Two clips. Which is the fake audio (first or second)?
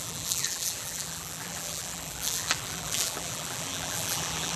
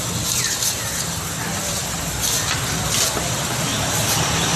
first